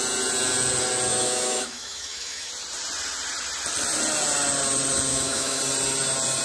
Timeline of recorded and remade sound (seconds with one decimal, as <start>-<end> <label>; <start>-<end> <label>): 0.0-1.1 recorded; 1.1-2.5 remade; 2.5-5.1 recorded; 5.1-5.6 remade; 5.6-6.4 recorded